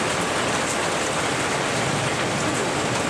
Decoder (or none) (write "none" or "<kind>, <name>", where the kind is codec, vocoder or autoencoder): none